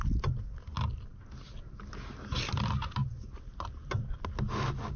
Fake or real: real